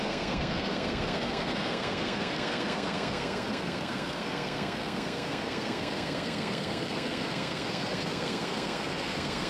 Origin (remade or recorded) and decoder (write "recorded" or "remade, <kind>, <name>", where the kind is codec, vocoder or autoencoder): remade, codec, SNAC